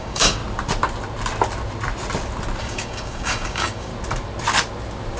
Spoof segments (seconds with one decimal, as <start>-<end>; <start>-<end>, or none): 0.0-0.4; 2.6-3.9